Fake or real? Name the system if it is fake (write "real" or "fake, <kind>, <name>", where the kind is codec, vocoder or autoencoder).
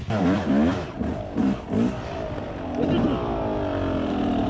real